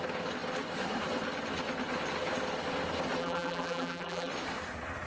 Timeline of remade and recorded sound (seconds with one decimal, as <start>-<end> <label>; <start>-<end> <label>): 0.0-3.2 recorded; 3.2-4.3 remade; 4.3-5.1 recorded